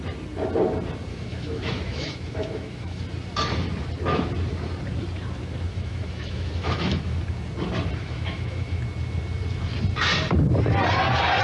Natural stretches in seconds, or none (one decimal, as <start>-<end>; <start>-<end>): 0.0-1.1; 3.0-5.7; 7.2-8.0; 8.8-11.4